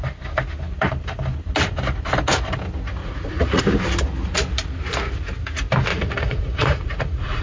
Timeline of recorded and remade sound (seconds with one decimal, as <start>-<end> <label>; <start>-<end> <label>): 0.0-3.0 recorded; 3.0-3.6 remade; 3.6-5.9 recorded; 5.9-7.4 remade